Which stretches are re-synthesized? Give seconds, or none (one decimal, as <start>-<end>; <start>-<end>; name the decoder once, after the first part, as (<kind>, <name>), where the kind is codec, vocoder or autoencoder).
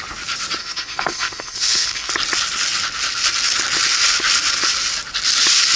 0.6-2.1 (codec, SNAC)